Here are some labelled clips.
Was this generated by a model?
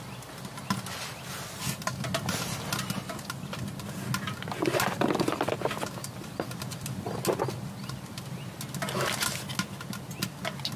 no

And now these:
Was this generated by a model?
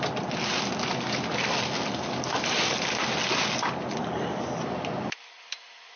no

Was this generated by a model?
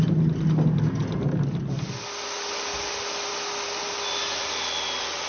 no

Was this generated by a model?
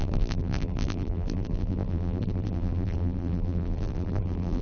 yes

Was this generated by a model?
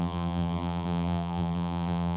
yes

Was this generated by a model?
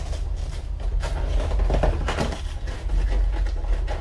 no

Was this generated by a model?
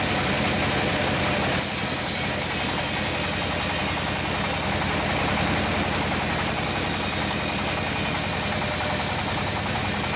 no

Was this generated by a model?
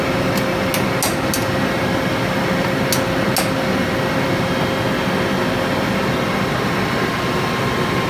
no